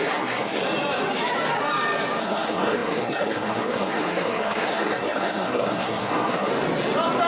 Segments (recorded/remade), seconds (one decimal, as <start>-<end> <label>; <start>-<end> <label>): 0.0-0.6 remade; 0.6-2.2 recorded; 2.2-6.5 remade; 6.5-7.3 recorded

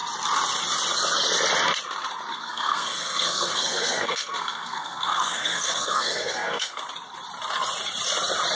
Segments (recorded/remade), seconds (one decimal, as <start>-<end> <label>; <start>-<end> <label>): 0.0-2.3 recorded; 2.3-6.8 remade; 6.8-8.5 recorded

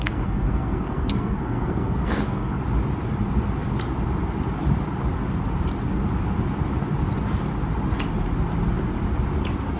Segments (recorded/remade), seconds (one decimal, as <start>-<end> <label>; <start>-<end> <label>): 0.0-2.6 remade; 2.6-9.8 recorded

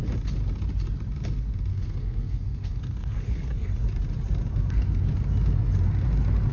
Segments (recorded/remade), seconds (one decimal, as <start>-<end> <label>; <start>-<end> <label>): 0.0-1.7 recorded; 1.7-3.7 remade; 3.7-4.5 recorded; 4.5-5.0 remade; 5.0-6.5 recorded

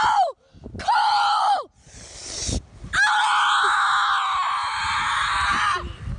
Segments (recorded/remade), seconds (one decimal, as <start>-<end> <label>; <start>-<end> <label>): 0.0-6.2 recorded

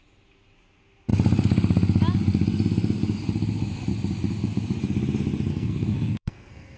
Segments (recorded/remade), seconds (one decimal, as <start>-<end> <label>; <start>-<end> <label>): 0.0-5.5 recorded; 5.5-6.8 remade

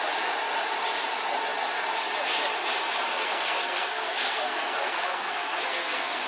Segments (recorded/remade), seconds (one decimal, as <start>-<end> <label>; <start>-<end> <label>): 0.0-3.1 recorded; 3.1-6.3 remade

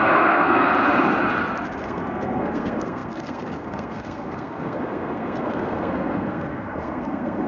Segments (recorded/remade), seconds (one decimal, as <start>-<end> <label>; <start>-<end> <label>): 0.0-0.7 remade; 0.7-1.8 recorded; 1.8-7.5 remade